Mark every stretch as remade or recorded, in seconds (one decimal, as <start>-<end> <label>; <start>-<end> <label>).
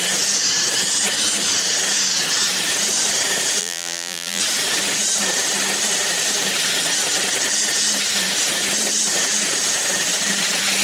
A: 0.0-3.6 recorded; 3.6-4.4 remade; 4.4-10.8 recorded